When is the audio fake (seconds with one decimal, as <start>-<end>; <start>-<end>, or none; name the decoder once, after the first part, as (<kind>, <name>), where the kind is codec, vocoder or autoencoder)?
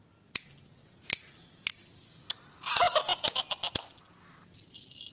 0.8-1.7 (vocoder, BigVGAN v2)